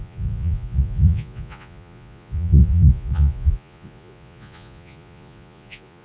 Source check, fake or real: fake